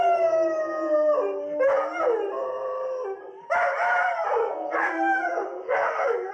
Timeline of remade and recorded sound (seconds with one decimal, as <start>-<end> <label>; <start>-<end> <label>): 0.0-4.4 recorded; 4.4-6.3 remade